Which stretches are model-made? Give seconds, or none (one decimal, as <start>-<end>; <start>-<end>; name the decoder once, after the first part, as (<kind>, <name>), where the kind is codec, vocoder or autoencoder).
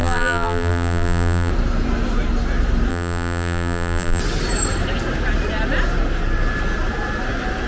0.0-1.5 (vocoder, BigVGAN v2); 2.9-4.2